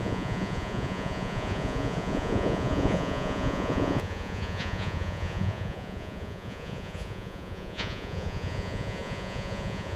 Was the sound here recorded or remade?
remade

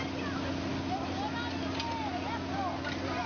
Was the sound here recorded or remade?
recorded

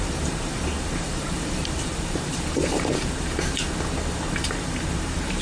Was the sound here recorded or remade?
remade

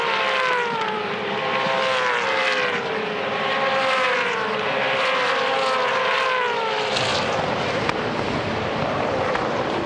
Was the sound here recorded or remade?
remade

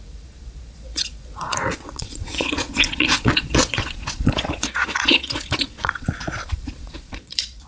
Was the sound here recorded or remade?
remade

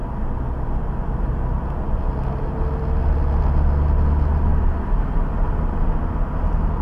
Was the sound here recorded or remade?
recorded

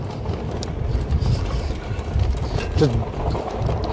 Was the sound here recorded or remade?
recorded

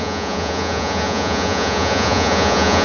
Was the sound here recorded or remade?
remade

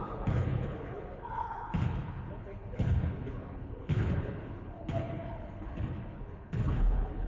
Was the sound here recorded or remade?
remade